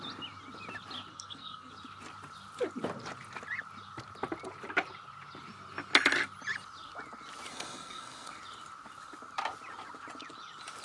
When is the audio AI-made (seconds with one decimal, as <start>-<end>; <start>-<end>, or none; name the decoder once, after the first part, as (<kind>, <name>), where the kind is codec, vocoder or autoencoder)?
1.1-1.7 (codec, SNAC); 7.5-8.4

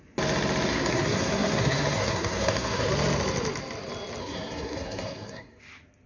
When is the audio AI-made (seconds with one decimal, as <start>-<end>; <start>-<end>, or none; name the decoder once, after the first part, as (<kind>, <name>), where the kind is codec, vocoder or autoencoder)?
0.7-2.9 (codec, SNAC); 4.2-5.6

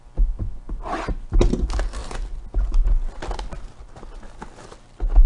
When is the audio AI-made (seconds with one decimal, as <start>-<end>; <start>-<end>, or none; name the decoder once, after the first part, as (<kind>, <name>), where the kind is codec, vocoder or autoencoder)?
none

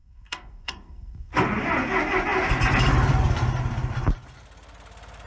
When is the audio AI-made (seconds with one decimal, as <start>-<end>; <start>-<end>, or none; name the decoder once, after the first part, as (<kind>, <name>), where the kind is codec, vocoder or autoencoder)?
0.0-1.3 (codec, SNAC)

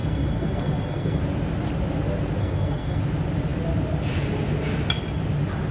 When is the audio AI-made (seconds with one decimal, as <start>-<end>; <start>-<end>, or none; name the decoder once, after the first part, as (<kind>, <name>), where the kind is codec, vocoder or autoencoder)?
0.0-1.2 (codec, SNAC); 2.4-3.0

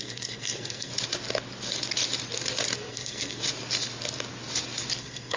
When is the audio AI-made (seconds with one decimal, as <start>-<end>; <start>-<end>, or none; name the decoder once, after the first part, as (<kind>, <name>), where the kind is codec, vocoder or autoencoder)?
0.0-0.9 (codec, SNAC); 2.9-3.4; 5.0-5.4